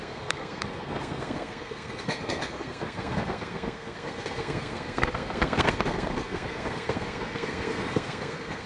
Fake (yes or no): yes